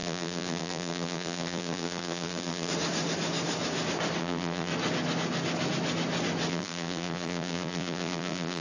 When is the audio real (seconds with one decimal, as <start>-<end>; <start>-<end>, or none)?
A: 2.7-4.2; 4.7-6.5